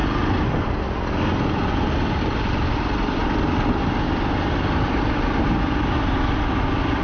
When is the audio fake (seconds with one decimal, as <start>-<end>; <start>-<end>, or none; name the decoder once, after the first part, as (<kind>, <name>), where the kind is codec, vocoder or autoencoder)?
none